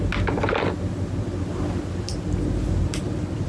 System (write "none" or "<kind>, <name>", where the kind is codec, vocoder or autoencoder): none